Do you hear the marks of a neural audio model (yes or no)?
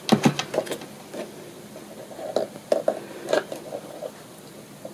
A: no